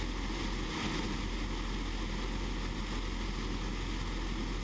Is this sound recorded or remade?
recorded